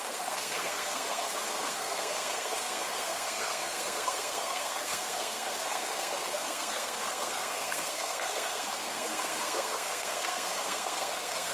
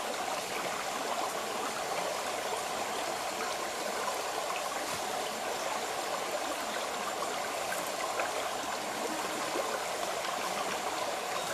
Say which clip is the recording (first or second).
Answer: second